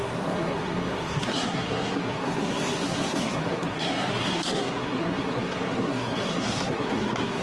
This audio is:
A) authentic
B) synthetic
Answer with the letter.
B